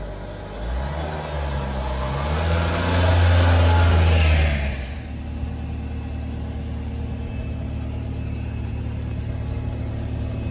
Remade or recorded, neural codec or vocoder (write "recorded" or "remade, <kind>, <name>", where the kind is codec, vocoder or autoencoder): recorded